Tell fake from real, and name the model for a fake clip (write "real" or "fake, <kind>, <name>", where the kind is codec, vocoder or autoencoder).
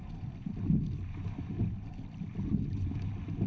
real